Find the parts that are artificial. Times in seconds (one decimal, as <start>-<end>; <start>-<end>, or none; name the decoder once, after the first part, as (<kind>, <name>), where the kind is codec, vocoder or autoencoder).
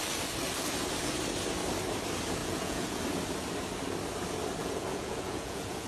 2.4-3.0 (vocoder, Vocos); 4.6-5.9